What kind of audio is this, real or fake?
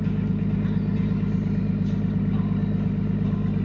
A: real